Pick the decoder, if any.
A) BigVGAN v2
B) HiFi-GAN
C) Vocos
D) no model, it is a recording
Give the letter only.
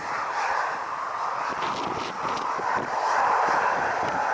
D